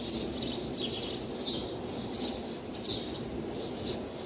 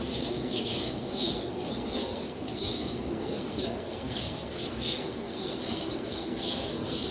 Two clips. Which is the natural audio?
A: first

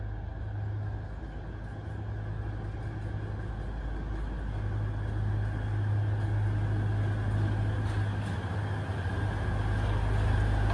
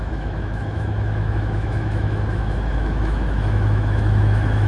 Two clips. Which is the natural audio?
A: first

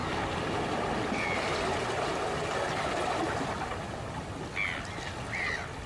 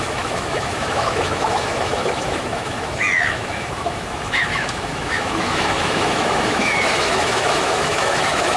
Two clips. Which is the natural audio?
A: first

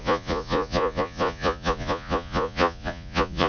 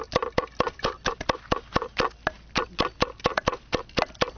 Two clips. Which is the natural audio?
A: second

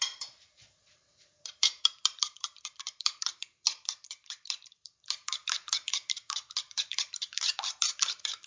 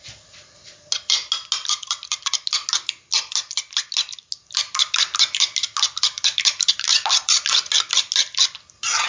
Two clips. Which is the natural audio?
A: second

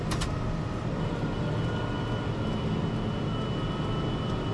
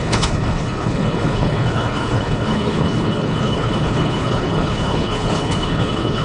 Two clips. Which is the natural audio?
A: first